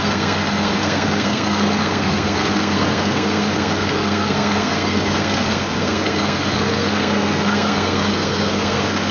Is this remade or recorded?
remade